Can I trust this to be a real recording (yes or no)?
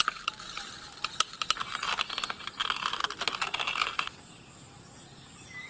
yes